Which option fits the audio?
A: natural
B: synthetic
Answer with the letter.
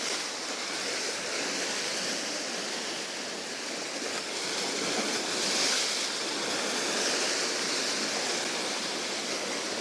A